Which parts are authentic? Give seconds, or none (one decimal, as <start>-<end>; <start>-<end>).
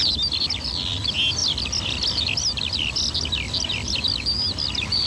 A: 0.0-5.1